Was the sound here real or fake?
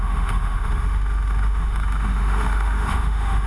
fake